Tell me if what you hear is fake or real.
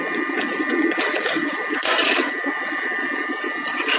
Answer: fake